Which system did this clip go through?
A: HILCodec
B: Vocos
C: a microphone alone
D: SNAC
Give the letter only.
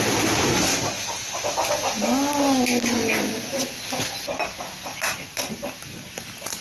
C